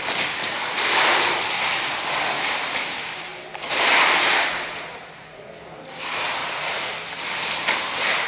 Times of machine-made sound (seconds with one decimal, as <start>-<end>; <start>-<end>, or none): 4.9-5.5; 6.4-6.9